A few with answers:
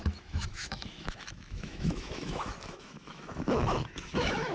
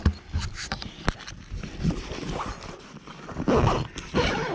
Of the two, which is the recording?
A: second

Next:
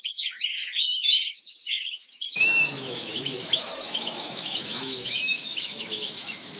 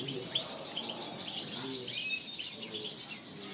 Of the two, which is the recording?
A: second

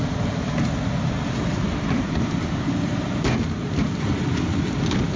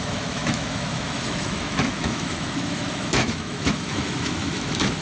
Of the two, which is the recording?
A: first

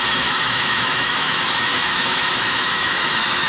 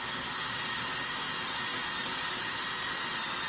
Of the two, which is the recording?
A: second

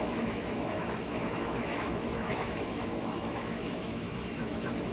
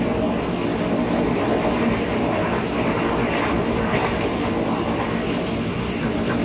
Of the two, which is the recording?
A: second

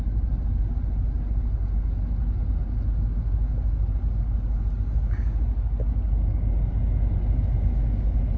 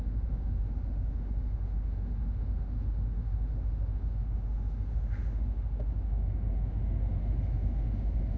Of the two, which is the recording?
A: first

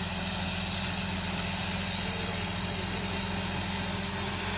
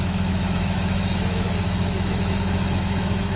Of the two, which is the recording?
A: first